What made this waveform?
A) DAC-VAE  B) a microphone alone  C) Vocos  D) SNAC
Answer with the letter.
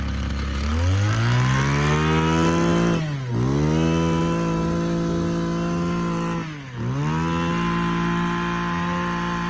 B